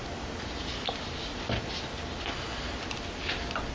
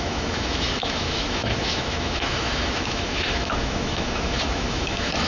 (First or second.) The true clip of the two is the first